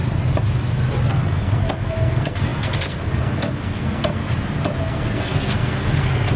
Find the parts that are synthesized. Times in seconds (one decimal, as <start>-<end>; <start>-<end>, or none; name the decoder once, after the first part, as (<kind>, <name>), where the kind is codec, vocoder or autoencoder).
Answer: 1.1-4.2 (codec, SNAC); 4.8-6.4